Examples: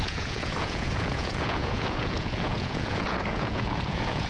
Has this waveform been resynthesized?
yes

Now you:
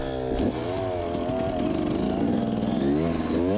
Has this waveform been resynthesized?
no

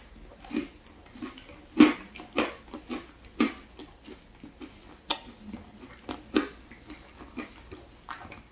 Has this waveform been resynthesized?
no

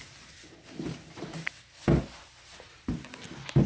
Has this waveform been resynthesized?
no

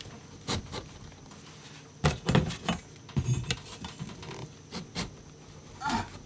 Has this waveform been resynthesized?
no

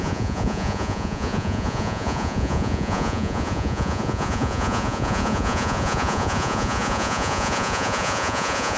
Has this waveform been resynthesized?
yes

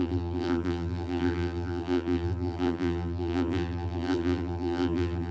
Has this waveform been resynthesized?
yes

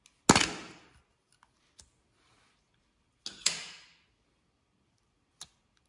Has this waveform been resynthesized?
no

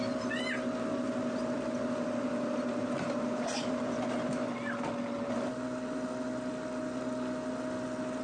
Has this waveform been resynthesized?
no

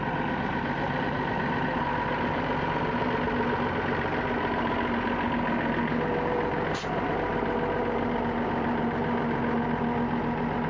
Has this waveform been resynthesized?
no